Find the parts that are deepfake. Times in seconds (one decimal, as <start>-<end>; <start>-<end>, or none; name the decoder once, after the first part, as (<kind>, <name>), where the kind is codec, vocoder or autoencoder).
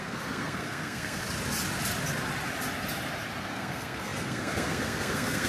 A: 0.0-1.2 (codec, SNAC); 3.4-5.5